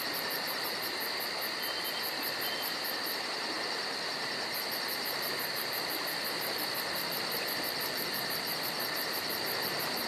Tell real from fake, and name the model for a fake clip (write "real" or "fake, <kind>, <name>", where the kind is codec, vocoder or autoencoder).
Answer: real